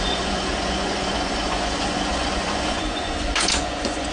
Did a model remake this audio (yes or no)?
yes